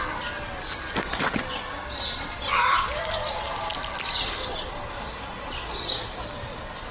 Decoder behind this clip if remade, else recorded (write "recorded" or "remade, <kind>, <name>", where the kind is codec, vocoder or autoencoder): remade, vocoder, BigVGAN v2